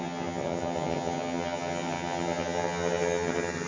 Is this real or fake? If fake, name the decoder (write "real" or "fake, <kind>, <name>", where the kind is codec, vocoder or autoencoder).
fake, vocoder, HiFi-GAN